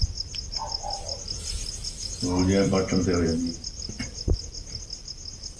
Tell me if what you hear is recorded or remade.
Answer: recorded